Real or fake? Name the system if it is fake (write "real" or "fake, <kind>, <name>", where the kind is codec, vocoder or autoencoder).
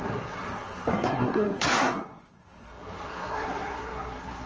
fake, codec, SNAC